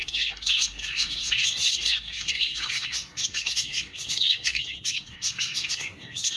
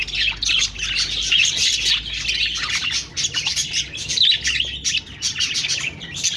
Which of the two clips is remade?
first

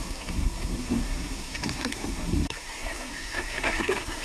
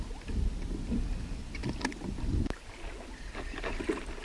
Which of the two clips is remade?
first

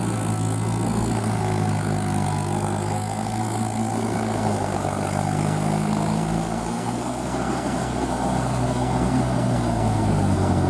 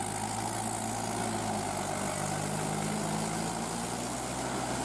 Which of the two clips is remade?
first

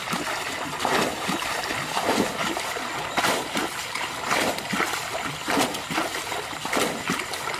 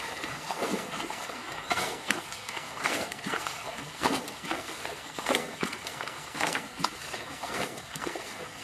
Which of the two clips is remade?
second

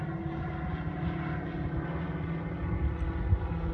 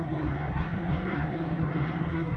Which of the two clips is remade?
second